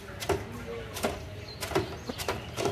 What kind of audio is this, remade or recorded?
recorded